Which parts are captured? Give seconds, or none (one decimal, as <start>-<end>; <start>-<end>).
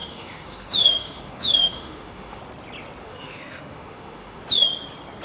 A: 2.4-3.0; 4.4-5.2